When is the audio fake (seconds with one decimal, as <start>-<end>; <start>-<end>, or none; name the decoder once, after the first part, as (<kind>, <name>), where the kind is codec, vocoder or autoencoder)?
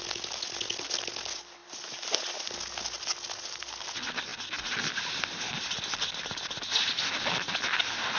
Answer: none